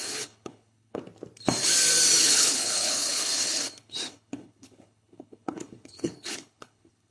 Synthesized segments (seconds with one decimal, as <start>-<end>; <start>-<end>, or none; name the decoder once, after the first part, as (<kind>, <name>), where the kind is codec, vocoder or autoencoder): 0.0-1.0 (codec, HILCodec); 2.2-7.1